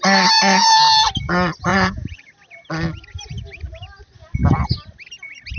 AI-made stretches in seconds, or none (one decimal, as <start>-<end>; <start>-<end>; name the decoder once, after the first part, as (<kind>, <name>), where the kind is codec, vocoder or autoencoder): 1.7-2.3 (vocoder, Vocos)